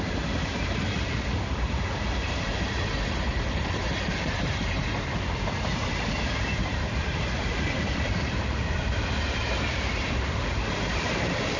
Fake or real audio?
fake